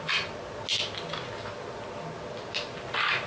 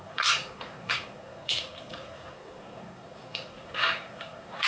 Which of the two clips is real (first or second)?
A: first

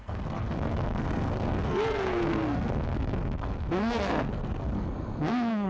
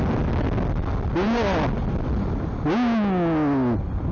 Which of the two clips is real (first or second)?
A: second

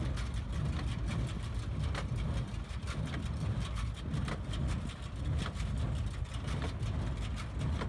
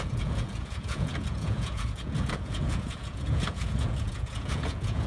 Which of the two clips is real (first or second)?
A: first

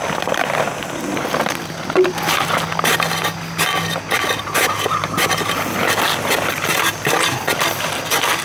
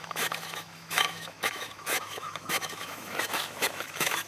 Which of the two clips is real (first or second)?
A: first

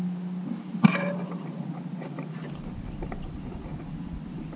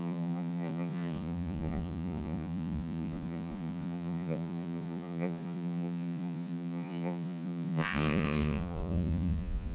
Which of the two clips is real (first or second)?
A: first